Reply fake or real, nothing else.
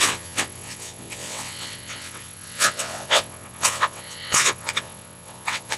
fake